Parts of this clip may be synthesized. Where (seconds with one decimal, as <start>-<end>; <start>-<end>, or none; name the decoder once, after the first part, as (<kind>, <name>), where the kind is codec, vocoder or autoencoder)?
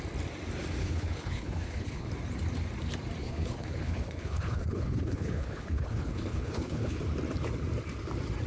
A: 0.8-2.1 (codec, HILCodec); 3.2-7.0